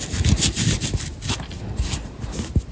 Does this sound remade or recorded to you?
recorded